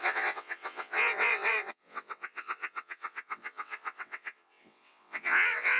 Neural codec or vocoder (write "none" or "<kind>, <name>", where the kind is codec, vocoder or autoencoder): vocoder, WaveNeXt